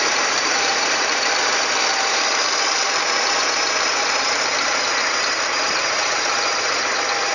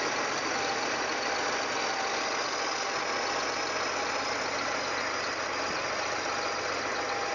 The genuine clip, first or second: second